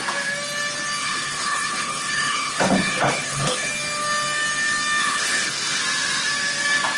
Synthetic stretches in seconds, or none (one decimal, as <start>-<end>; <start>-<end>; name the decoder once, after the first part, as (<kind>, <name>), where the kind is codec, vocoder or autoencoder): 1.0-3.7 (codec, HILCodec); 5.0-5.8